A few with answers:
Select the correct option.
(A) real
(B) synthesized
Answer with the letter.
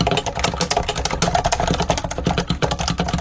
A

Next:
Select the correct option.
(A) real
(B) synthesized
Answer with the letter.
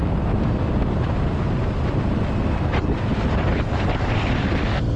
A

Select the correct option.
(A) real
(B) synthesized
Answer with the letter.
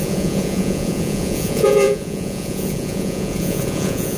B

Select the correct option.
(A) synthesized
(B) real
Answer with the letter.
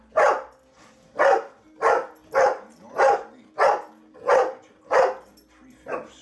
B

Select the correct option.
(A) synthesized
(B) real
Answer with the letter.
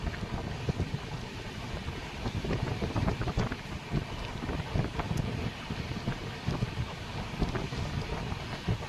B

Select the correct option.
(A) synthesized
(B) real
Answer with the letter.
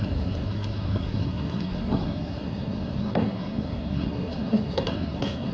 A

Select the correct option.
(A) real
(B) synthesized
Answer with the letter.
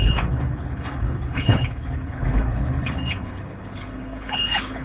B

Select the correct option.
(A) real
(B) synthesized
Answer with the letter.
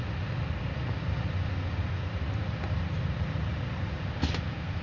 A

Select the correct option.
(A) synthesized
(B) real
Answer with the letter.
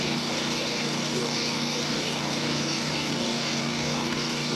A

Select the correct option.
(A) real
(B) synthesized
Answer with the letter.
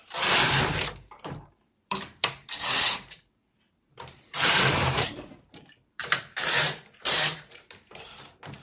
B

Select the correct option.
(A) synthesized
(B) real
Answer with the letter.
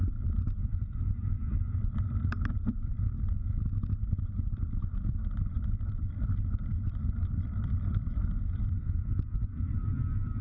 A